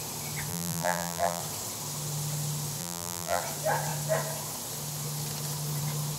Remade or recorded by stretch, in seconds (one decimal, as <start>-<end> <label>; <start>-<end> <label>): 0.0-0.5 recorded; 0.5-1.4 remade; 1.4-2.8 recorded; 2.8-3.4 remade; 3.4-6.2 recorded